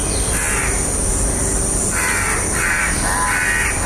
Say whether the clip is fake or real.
real